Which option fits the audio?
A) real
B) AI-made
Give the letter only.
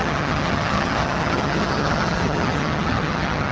B